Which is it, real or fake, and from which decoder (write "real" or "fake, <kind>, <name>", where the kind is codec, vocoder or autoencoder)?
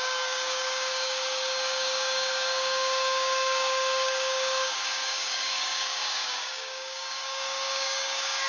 fake, codec, DAC